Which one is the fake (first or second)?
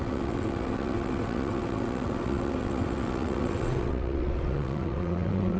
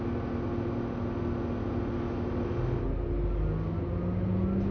first